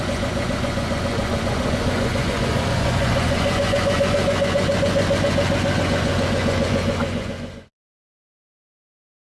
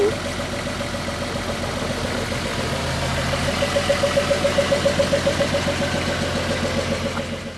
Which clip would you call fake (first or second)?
first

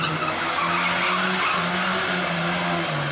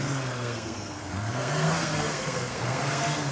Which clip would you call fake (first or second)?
second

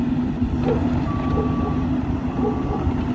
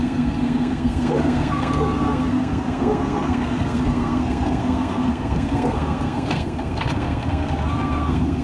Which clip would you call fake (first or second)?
second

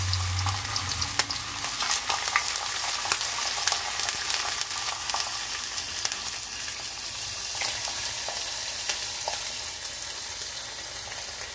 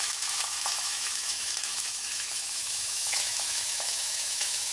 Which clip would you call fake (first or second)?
second